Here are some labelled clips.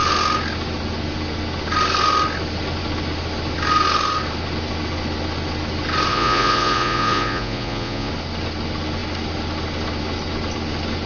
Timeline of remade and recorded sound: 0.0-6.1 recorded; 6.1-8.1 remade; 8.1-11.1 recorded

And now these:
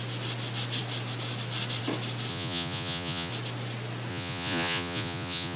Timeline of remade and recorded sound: 0.0-2.3 recorded; 2.3-3.3 remade; 3.3-4.1 recorded; 4.1-5.6 remade

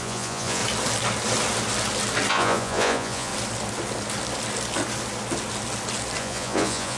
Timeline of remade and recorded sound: 0.0-0.6 remade; 0.6-2.3 recorded; 2.3-3.3 remade; 3.3-6.2 recorded; 6.2-7.0 remade

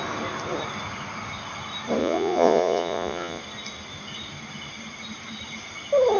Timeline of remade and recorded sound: 0.0-2.0 recorded; 2.0-3.4 remade; 3.4-6.2 recorded

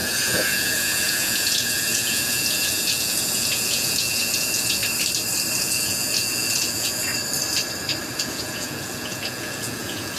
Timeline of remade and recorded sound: 0.0-4.8 remade; 4.8-5.6 recorded; 5.6-7.1 remade; 7.1-8.2 recorded; 8.2-10.2 remade

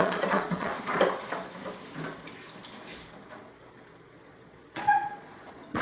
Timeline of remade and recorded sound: 0.0-0.7 remade; 0.7-4.2 recorded; 4.2-5.8 remade

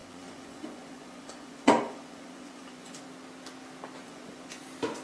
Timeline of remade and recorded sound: 0.0-3.0 remade; 3.0-4.0 recorded; 4.0-4.6 remade; 4.6-5.0 recorded

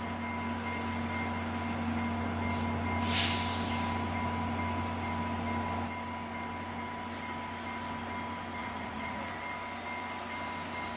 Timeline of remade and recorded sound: 0.0-8.6 recorded; 8.6-9.3 remade; 9.3-11.0 recorded